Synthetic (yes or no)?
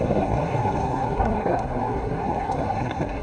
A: yes